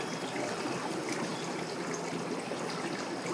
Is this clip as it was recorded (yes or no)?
yes